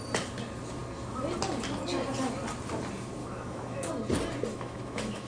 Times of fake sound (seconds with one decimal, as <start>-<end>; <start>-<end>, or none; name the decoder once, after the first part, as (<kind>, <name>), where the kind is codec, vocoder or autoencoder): 3.2-3.9 (autoencoder, DAC-VAE); 4.5-5.3